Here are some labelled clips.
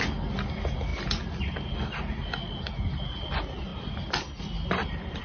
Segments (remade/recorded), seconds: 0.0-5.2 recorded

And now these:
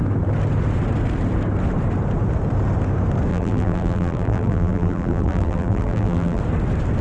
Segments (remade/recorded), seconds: 0.0-3.3 recorded; 3.3-6.4 remade; 6.4-7.0 recorded

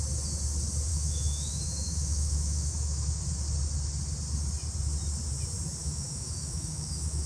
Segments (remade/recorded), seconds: 0.0-0.9 recorded; 0.9-3.2 remade; 3.2-5.8 recorded; 5.8-7.3 remade

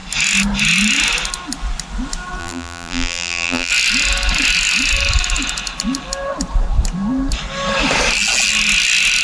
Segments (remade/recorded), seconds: 0.0-2.4 recorded; 2.4-3.7 remade; 3.7-9.2 recorded